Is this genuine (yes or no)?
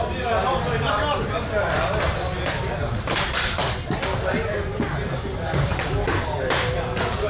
yes